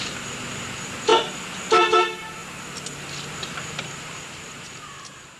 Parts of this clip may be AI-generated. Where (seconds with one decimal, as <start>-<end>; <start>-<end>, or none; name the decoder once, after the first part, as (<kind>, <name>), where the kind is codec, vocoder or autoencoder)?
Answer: 0.0-1.1 (vocoder, BigVGAN v2); 1.7-2.4; 3.3-5.4